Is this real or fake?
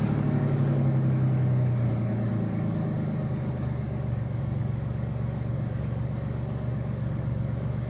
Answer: fake